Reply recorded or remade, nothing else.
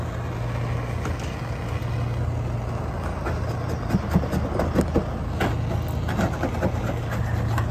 recorded